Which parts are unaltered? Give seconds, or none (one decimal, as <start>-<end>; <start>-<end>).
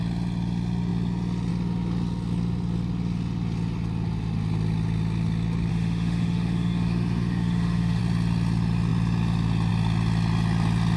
0.0-5.7; 8.0-11.0